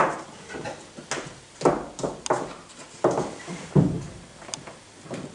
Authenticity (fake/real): real